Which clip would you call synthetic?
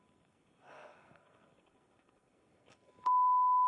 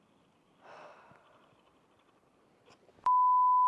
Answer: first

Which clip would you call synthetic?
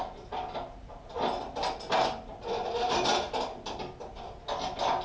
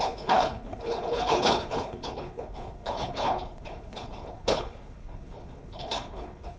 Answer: second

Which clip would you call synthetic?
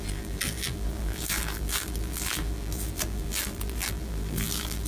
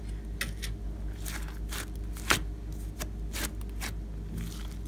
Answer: first